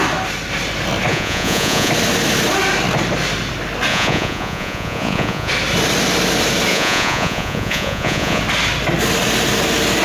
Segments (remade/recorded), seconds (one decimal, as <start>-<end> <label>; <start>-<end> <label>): 0.0-1.1 recorded; 1.1-1.9 remade; 1.9-3.9 recorded; 3.9-5.5 remade; 5.5-6.7 recorded; 6.7-8.4 remade; 8.4-10.0 recorded